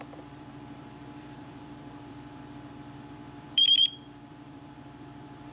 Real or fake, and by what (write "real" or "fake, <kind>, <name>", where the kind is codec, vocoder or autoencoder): fake, vocoder, BigVGAN v2